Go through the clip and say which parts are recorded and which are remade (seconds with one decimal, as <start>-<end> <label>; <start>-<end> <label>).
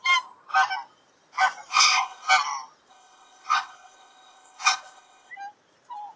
0.0-1.7 recorded; 1.7-2.3 remade; 2.3-2.9 recorded; 2.9-5.3 remade; 5.3-6.2 recorded